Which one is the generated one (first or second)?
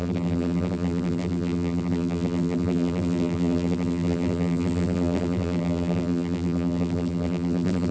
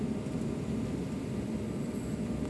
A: first